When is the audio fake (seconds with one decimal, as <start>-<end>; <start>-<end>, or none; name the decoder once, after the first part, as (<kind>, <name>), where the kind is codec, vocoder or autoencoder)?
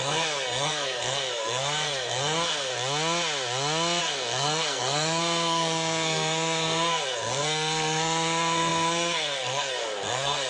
0.0-2.7 (codec, SNAC); 4.0-10.5